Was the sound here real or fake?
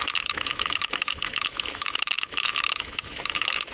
fake